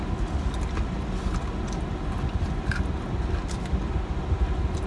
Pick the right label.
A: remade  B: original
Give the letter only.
B